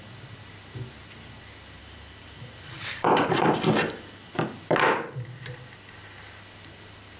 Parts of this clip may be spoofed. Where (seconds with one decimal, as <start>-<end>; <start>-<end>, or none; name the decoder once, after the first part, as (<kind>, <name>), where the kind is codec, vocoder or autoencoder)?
1.8-4.3 (vocoder, BigVGAN v2)